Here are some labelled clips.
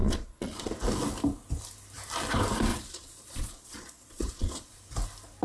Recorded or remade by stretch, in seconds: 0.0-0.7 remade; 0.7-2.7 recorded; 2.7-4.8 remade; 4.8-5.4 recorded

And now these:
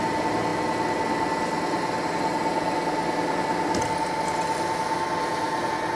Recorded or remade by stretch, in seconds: 0.0-6.0 recorded

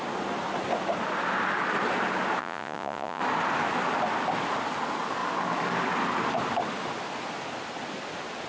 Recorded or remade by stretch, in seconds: 0.0-2.4 recorded; 2.4-3.2 remade; 3.2-8.5 recorded

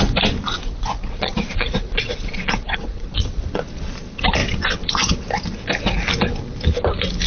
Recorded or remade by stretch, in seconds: 0.0-0.6 recorded; 0.6-3.4 remade; 3.4-7.3 recorded

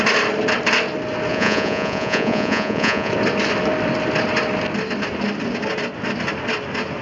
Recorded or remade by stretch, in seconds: 0.0-1.3 recorded; 1.3-3.1 remade; 3.1-7.0 recorded

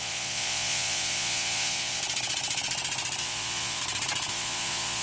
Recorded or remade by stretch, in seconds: 0.0-2.0 remade; 2.0-3.2 recorded; 3.2-3.8 remade; 3.8-4.3 recorded; 4.3-5.0 remade